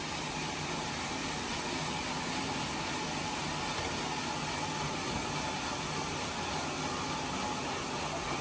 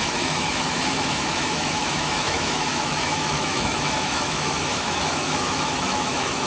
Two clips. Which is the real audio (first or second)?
first